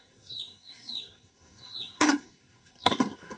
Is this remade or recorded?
remade